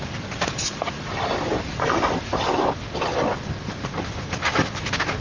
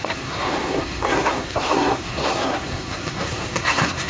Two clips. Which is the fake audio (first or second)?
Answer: second